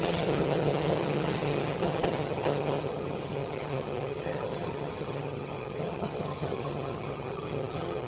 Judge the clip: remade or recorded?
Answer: remade